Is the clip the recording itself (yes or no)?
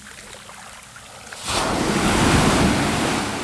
yes